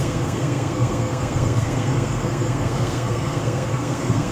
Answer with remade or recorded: remade